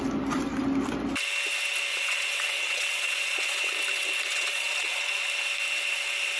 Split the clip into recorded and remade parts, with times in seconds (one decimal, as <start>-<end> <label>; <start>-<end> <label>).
0.0-1.9 recorded; 1.9-3.7 remade; 3.7-4.3 recorded; 4.3-5.1 remade; 5.1-6.4 recorded